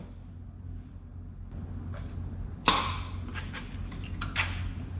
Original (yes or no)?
yes